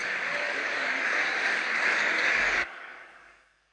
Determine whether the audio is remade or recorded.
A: remade